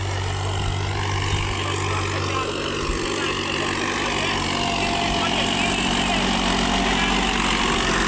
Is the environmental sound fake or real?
real